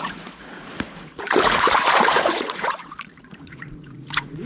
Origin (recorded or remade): remade